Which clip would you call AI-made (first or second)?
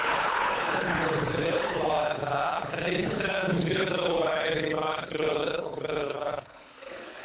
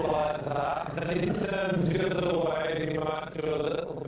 first